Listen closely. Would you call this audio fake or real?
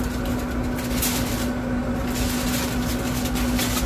real